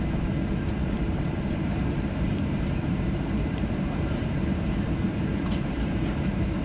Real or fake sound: fake